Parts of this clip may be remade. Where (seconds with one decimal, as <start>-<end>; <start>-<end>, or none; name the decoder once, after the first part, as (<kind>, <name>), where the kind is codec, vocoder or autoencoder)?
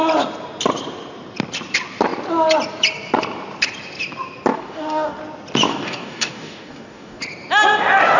4.5-5.2 (codec, DAC); 5.7-7.2